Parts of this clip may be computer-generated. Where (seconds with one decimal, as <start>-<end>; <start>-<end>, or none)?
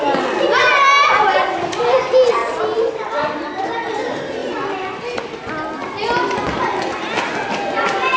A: none